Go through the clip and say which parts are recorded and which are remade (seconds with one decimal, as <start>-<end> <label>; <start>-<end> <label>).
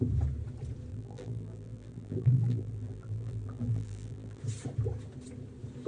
0.0-0.9 recorded; 0.9-4.4 remade; 4.4-5.9 recorded